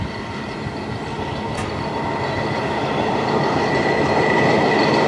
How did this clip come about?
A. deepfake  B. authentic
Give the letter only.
B